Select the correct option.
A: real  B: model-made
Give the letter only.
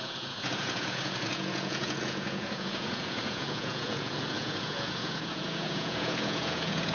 B